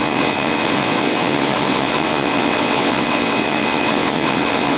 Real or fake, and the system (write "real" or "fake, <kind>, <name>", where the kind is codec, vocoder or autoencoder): fake, vocoder, WaveNeXt